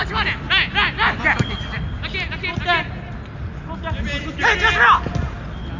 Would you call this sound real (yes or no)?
yes